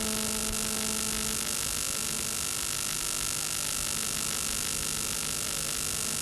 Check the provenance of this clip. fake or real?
real